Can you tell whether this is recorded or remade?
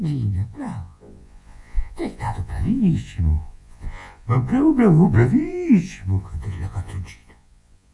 remade